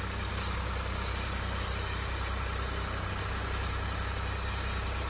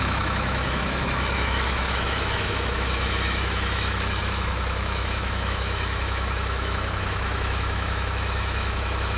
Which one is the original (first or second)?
first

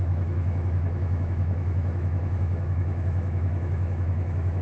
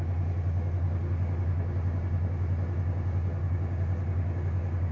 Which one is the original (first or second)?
second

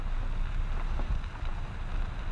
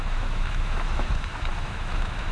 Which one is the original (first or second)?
first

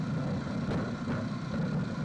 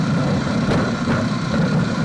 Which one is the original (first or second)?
first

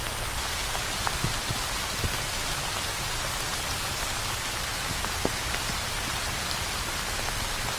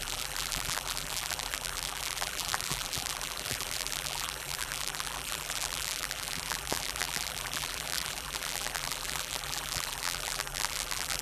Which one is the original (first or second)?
first